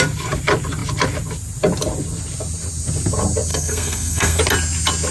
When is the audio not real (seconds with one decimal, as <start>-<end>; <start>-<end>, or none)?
3.5-4.4